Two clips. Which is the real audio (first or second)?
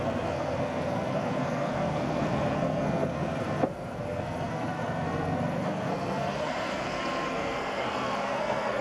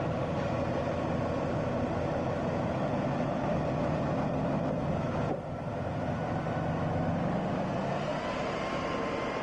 second